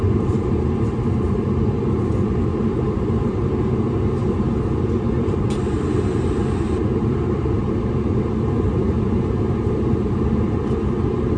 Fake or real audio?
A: fake